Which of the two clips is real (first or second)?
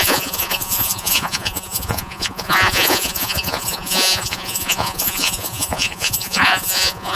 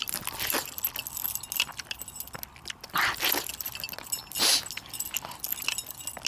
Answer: second